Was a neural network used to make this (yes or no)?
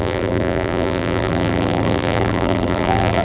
yes